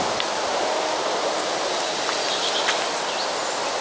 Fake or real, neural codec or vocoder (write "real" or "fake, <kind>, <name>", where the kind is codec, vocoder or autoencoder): real